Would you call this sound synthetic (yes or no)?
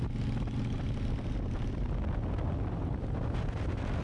no